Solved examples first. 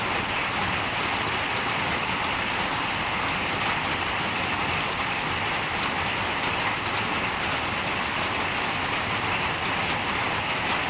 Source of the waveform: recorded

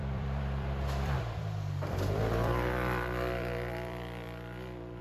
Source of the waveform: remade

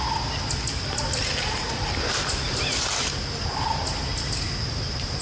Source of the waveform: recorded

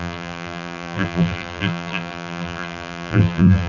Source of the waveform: remade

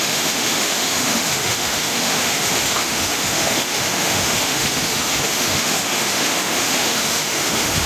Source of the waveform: remade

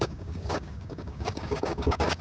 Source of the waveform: remade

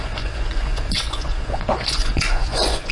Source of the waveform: remade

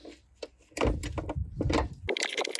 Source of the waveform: recorded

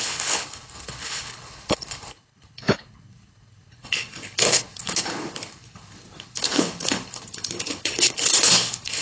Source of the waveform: remade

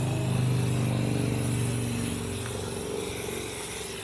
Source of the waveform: recorded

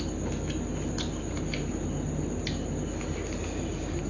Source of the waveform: recorded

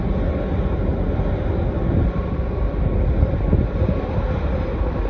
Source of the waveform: recorded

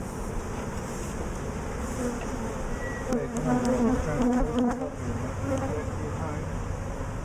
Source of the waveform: recorded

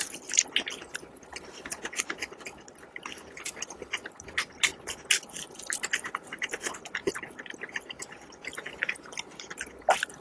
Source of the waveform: recorded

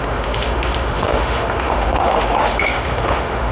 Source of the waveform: remade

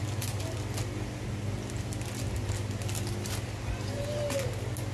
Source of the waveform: recorded